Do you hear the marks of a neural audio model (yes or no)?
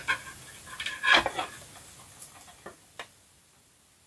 no